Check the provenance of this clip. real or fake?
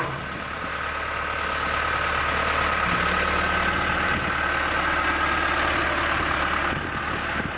real